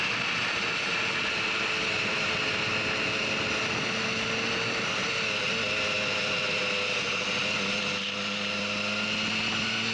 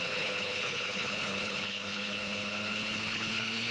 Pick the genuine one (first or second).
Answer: first